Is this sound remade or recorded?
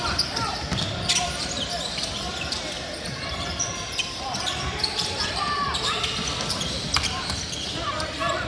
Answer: remade